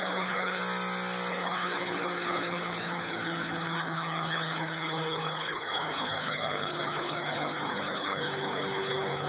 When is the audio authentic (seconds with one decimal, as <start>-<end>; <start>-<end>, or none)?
0.6-1.3

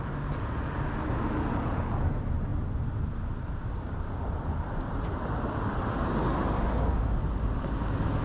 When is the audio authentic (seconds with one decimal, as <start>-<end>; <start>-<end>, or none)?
0.0-8.2

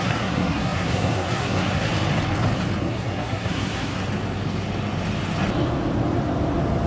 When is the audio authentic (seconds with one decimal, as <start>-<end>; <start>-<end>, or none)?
1.9-2.8; 4.0-6.9

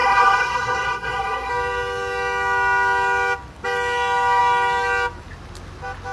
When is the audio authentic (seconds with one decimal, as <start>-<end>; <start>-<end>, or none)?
1.5-6.1

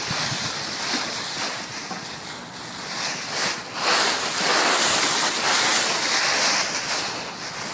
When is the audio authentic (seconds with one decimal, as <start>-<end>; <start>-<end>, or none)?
0.0-7.7